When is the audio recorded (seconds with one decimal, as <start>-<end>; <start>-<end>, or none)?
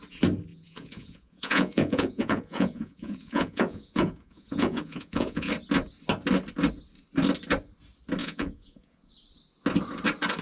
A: 0.0-0.5; 5.5-8.2; 9.1-10.4